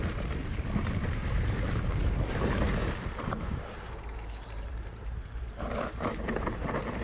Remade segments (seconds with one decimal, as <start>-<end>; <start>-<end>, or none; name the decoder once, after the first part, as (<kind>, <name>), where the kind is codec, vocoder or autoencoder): 0.0-7.0 (vocoder, BigVGAN v2)